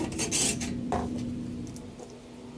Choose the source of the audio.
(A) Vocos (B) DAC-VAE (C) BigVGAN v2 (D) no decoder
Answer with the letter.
D